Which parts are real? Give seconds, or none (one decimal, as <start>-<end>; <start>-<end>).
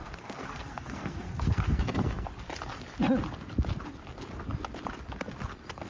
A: 2.3-5.9